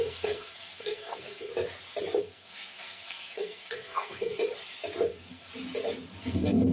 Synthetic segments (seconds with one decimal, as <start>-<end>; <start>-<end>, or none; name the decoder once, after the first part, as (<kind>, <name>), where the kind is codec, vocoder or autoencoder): 0.0-1.5 (codec, SNAC); 2.2-4.3; 5.1-5.5; 6.2-6.7